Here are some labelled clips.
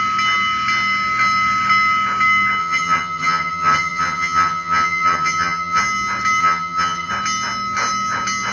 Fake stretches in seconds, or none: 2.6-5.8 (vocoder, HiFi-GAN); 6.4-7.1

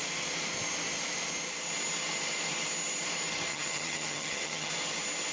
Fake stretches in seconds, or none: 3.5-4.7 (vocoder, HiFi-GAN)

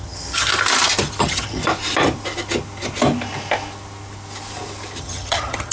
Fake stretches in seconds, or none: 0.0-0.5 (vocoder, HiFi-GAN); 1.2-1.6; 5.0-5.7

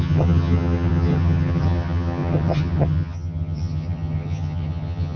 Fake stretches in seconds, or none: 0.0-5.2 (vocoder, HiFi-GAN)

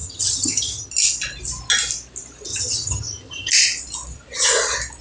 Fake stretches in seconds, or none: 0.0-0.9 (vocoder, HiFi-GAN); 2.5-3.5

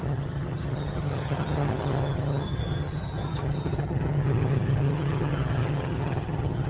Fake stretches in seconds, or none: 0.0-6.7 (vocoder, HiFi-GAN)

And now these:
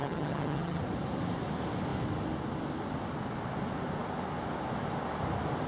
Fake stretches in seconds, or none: 0.0-0.8 (vocoder, HiFi-GAN)

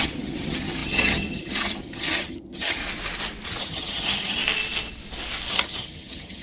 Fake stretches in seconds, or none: 0.0-2.8 (vocoder, HiFi-GAN); 3.6-4.4; 5.5-6.4